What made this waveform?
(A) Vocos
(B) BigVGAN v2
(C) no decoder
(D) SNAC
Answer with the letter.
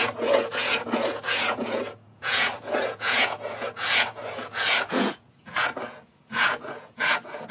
A